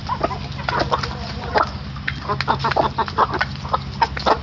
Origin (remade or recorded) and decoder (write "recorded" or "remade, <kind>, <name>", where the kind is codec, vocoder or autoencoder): recorded